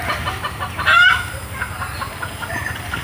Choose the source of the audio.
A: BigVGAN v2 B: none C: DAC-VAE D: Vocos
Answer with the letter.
B